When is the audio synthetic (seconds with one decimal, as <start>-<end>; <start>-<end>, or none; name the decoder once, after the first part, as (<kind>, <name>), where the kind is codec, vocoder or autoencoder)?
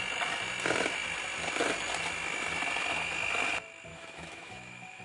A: 3.9-5.0 (autoencoder, DAC-VAE)